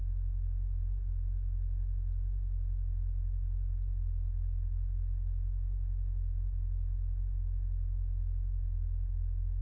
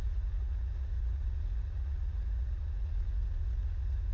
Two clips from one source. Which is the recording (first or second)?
first